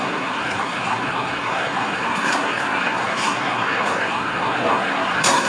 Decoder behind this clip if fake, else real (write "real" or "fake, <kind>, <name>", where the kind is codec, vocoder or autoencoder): fake, codec, SNAC